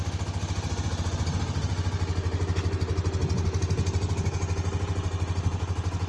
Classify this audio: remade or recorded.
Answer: recorded